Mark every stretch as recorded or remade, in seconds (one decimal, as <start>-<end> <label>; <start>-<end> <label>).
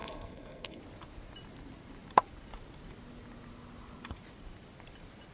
0.0-0.8 remade; 0.8-5.3 recorded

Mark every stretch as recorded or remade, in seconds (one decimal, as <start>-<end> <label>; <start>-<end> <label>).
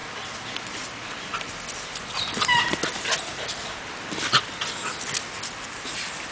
0.0-6.3 recorded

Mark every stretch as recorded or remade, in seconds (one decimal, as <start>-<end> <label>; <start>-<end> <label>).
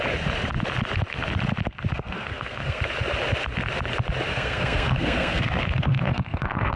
0.0-1.9 recorded; 1.9-2.8 remade; 2.8-4.3 recorded; 4.3-6.8 remade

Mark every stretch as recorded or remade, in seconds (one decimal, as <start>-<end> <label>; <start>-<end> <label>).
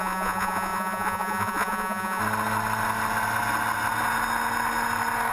0.0-2.2 remade; 2.2-5.3 recorded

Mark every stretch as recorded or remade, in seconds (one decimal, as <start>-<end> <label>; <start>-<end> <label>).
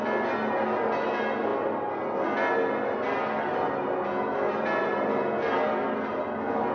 0.0-6.7 recorded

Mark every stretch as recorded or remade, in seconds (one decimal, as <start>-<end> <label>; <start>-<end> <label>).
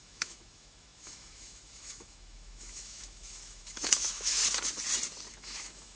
0.0-4.4 remade; 4.4-5.3 recorded; 5.3-6.0 remade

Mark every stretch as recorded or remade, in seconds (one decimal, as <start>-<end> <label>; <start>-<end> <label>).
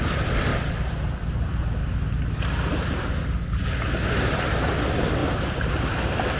0.0-6.4 remade